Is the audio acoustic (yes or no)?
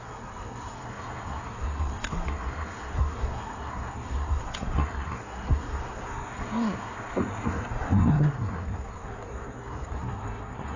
no